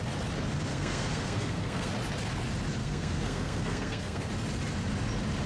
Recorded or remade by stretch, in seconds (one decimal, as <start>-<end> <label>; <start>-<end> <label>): 0.0-0.7 recorded; 0.7-1.9 remade; 1.9-2.8 recorded; 2.8-4.3 remade; 4.3-5.5 recorded